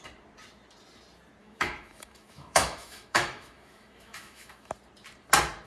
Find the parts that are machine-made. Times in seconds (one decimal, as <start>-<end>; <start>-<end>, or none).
1.4-4.7